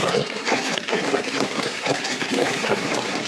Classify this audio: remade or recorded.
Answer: remade